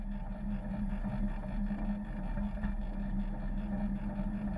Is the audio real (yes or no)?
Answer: yes